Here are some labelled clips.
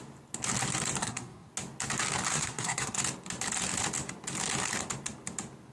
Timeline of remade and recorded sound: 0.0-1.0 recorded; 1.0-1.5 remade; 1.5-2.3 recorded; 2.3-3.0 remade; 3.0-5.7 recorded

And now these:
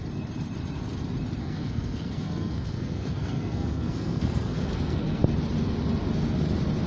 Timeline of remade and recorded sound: 0.0-1.4 recorded; 1.4-5.2 remade; 5.2-6.9 recorded

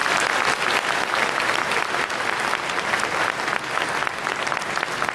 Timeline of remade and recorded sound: 0.0-5.1 recorded

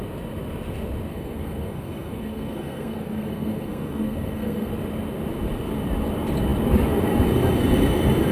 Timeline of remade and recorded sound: 0.0-1.1 recorded; 1.1-4.7 remade; 4.7-8.3 recorded

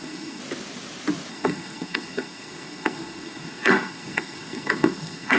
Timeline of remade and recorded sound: 0.0-0.4 remade; 0.4-1.3 recorded; 1.3-5.4 remade